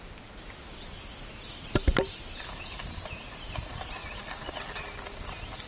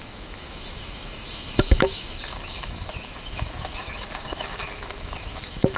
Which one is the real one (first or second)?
first